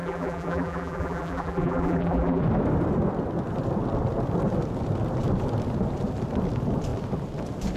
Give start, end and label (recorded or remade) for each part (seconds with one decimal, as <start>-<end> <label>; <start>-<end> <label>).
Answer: 0.0-2.4 remade; 2.4-7.8 recorded